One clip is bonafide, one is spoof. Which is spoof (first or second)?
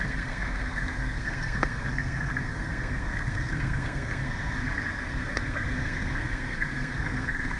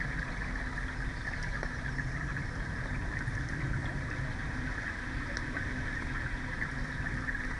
first